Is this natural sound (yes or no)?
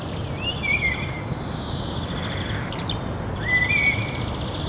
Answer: yes